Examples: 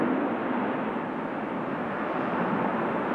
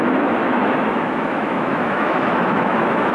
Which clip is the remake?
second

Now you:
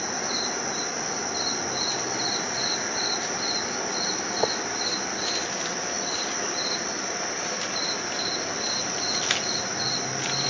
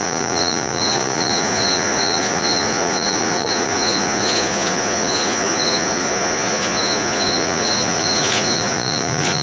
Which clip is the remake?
second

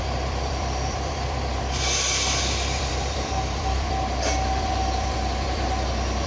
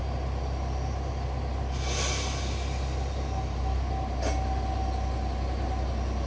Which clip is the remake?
first